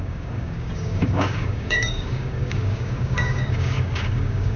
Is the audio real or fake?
fake